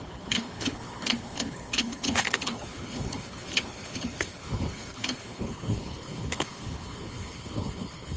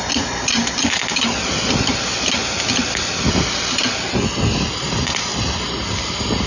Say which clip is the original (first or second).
second